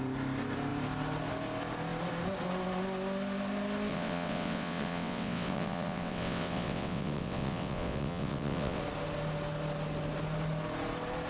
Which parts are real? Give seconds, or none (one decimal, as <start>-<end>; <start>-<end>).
0.0-3.9; 8.8-11.3